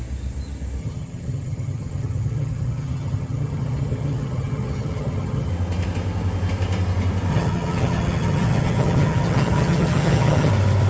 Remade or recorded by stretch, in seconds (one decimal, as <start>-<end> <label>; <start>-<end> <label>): 0.0-0.8 recorded; 0.8-5.5 remade; 5.5-7.3 recorded; 7.3-10.5 remade; 10.5-10.9 recorded